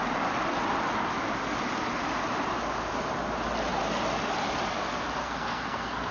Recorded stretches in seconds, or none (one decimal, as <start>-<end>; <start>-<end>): 0.0-5.2